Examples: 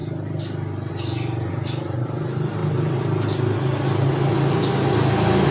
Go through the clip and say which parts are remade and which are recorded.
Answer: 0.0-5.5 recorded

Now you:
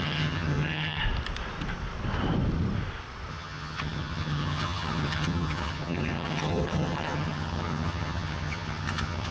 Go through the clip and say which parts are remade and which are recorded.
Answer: 0.0-1.0 remade; 1.0-3.3 recorded; 3.3-9.3 remade

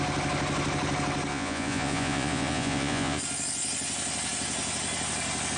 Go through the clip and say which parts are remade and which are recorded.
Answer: 0.0-1.3 recorded; 1.3-3.2 remade; 3.2-5.6 recorded